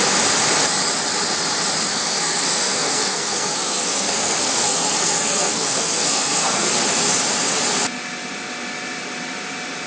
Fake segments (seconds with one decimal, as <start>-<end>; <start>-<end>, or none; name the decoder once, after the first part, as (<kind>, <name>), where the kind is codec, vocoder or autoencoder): 1.9-6.7 (codec, SNAC)